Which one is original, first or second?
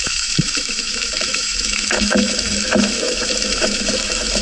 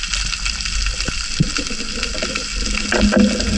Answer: second